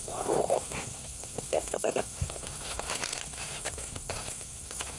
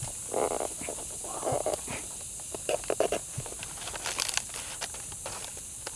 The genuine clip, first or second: second